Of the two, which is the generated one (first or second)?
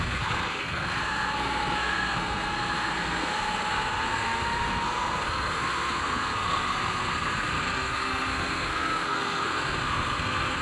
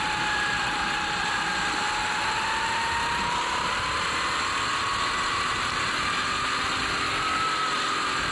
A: first